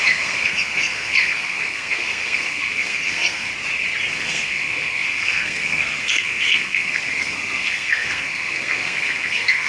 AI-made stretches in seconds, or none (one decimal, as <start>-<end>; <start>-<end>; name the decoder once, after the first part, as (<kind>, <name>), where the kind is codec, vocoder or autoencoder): 0.0-3.5 (codec, SNAC); 4.1-9.7